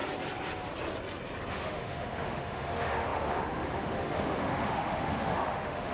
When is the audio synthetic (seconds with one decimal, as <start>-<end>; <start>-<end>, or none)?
1.5-5.9